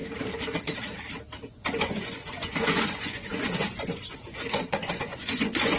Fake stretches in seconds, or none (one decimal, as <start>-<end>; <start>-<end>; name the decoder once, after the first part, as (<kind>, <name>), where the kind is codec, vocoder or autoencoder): 1.5-5.8 (vocoder, Vocos)